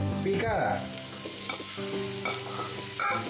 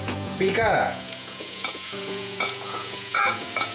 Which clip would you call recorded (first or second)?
first